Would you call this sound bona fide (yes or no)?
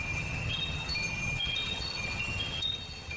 no